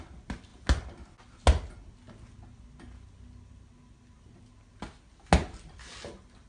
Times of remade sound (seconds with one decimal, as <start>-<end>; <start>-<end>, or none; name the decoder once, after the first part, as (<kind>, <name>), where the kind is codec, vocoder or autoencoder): none